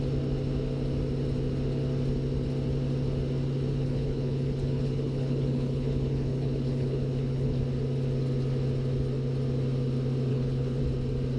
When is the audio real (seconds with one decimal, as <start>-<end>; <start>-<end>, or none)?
0.0-3.7; 7.6-10.3; 10.8-11.4